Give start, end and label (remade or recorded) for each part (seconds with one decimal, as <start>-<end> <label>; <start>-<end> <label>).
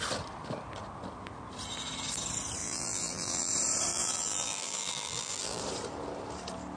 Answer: 0.0-2.6 recorded; 2.6-3.5 remade; 3.5-3.9 recorded; 3.9-5.6 remade; 5.6-6.8 recorded